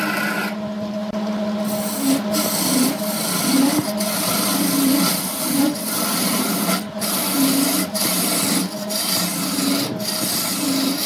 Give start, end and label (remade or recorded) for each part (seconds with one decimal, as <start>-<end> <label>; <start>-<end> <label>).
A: 0.0-4.5 recorded; 4.5-9.0 remade; 9.0-11.1 recorded